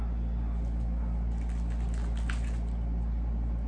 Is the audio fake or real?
real